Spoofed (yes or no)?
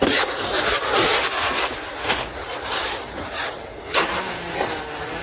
no